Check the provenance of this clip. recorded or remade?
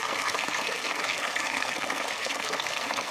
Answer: remade